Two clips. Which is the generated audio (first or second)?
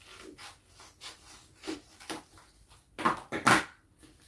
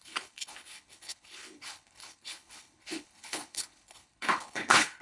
second